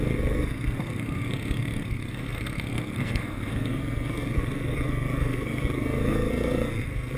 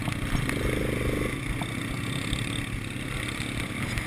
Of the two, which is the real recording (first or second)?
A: second